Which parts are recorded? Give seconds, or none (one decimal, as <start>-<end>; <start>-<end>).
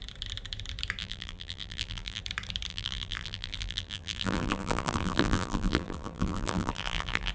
0.0-1.0; 2.2-2.7